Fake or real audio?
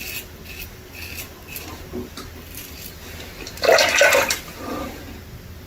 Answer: real